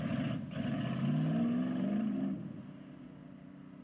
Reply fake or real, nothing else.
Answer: real